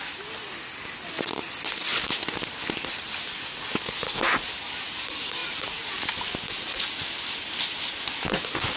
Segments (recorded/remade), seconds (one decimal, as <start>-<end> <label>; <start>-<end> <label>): 0.0-1.9 recorded; 1.9-2.6 remade; 2.6-5.4 recorded; 5.4-6.1 remade; 6.1-8.8 recorded